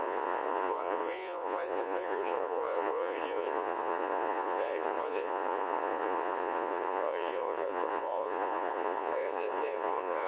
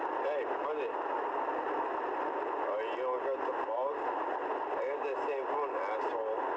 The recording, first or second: second